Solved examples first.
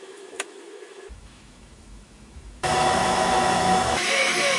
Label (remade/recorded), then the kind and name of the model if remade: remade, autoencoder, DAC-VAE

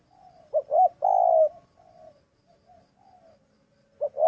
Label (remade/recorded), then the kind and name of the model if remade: recorded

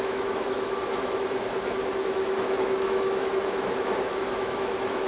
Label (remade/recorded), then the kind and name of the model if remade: remade, autoencoder, DAC-VAE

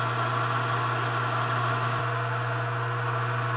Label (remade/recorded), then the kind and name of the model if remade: recorded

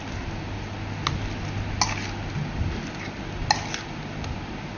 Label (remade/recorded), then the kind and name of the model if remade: recorded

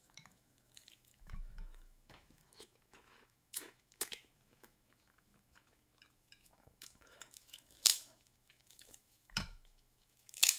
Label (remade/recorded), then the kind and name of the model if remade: remade, autoencoder, DAC-VAE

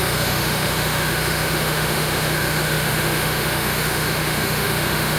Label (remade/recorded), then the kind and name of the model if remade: remade, autoencoder, DAC-VAE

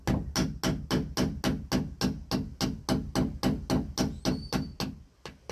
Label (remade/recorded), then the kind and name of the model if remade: recorded